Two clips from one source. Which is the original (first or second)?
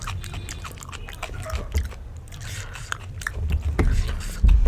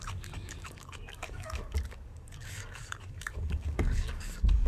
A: first